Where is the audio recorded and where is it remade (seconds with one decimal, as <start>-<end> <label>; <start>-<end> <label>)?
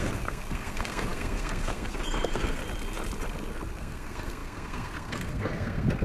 0.0-2.6 remade; 2.6-3.8 recorded; 3.8-6.0 remade